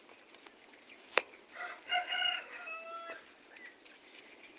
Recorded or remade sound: recorded